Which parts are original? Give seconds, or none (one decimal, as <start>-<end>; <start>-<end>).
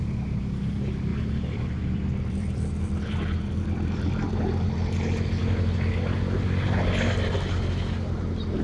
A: 0.0-1.1; 4.1-8.6